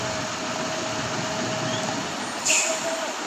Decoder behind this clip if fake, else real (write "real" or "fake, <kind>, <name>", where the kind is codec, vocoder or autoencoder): real